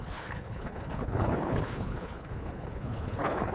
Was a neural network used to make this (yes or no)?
yes